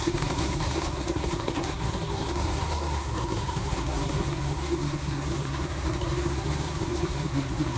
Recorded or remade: remade